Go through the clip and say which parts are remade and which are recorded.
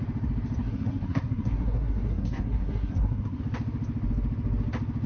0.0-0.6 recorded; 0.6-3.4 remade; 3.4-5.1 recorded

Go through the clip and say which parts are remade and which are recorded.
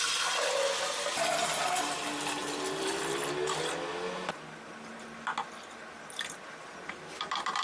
0.0-2.4 remade; 2.4-6.9 recorded; 6.9-7.6 remade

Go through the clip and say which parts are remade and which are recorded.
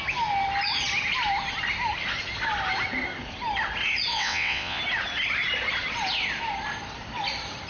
0.0-4.1 recorded; 4.1-4.8 remade; 4.8-7.7 recorded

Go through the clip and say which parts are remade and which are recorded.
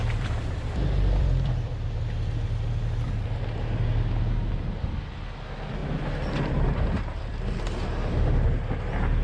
0.0-1.7 remade; 1.7-5.8 recorded; 5.8-6.7 remade; 6.7-9.2 recorded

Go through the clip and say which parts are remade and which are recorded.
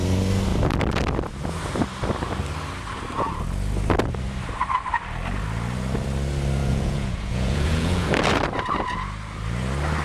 0.0-6.6 recorded; 6.6-8.1 remade; 8.1-10.0 recorded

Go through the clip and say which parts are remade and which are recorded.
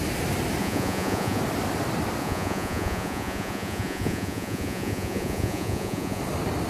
0.0-0.6 recorded; 0.6-1.4 remade; 1.4-2.2 recorded; 2.2-6.2 remade; 6.2-6.7 recorded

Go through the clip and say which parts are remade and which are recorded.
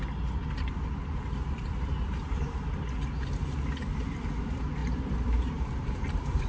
0.0-4.8 recorded; 4.8-6.5 remade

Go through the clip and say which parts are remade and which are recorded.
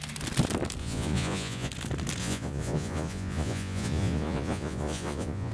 0.0-0.8 recorded; 0.8-1.7 remade; 1.7-2.2 recorded; 2.2-5.5 remade